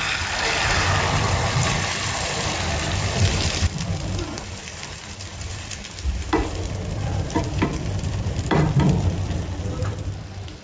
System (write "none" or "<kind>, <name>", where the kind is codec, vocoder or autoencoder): vocoder, BigVGAN v2